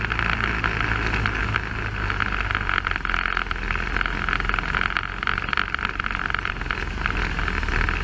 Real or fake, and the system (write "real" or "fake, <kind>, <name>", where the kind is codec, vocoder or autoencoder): real